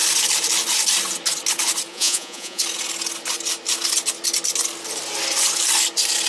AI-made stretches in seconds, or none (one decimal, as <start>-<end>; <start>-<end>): 1.9-2.6